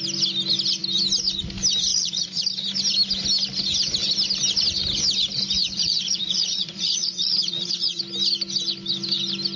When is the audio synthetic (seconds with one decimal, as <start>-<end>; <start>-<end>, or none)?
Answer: 1.9-2.4; 5.6-8.0